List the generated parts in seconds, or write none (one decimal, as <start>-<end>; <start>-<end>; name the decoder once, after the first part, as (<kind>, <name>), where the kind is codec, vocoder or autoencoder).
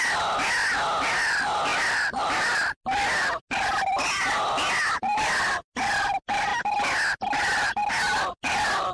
none